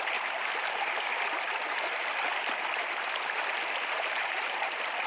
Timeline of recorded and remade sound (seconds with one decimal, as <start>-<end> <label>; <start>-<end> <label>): 0.0-5.1 recorded